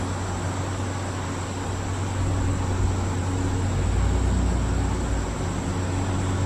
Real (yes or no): yes